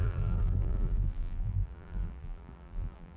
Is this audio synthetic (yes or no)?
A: yes